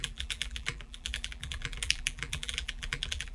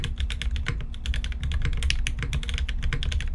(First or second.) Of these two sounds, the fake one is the first